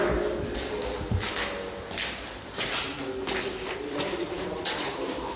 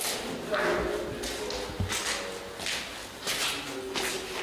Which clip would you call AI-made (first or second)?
first